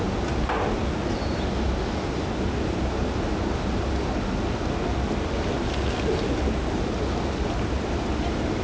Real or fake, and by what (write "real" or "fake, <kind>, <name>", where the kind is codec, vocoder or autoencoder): real